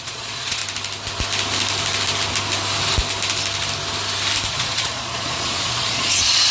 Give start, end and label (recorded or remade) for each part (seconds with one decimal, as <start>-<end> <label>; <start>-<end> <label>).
0.0-0.6 remade; 0.6-4.5 recorded; 4.5-6.5 remade